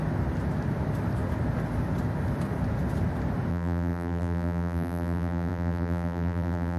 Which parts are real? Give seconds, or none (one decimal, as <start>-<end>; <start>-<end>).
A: 0.0-3.5